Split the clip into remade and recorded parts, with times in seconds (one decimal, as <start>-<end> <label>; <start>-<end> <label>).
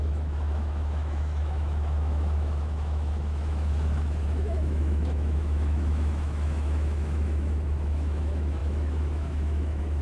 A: 0.0-10.0 remade